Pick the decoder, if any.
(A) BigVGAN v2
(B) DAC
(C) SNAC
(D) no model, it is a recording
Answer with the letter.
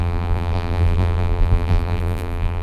A